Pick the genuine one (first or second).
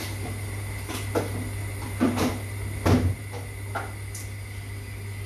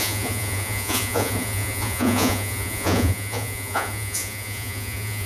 first